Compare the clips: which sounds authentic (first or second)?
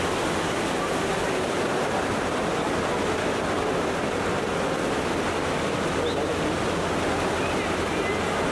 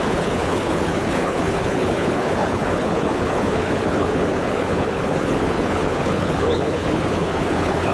first